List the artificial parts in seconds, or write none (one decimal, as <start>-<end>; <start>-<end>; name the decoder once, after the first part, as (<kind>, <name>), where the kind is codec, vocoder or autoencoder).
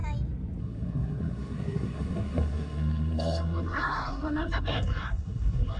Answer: 0.6-5.8 (codec, SNAC)